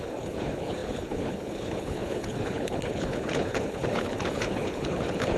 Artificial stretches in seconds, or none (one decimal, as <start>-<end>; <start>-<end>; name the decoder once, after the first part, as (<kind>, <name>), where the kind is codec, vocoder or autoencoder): 0.0-5.4 (codec, HILCodec)